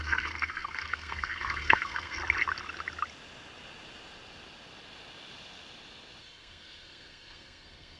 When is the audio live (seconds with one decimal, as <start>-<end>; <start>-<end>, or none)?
2.2-6.2